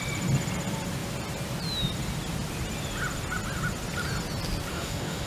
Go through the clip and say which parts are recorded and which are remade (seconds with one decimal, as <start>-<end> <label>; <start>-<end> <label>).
0.0-4.7 recorded; 4.7-5.3 remade